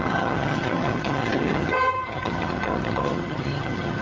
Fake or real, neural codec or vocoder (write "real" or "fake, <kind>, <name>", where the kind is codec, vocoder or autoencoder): fake, vocoder, HiFi-GAN